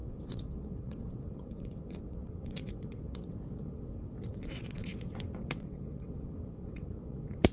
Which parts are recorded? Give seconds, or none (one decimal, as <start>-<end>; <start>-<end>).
none